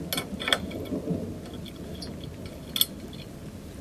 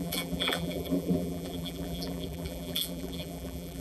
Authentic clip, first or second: first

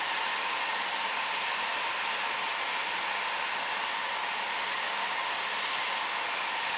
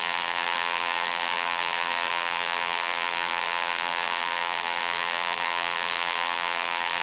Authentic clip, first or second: first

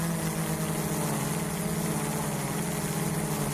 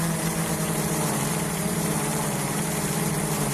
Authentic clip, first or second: first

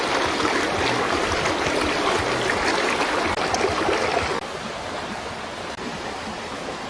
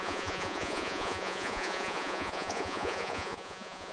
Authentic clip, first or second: first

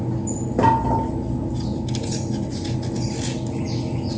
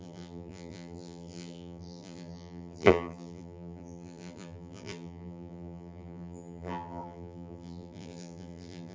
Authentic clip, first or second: first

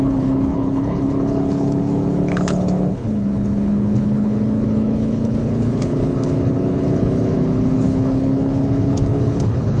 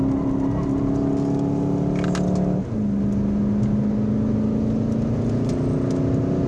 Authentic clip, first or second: second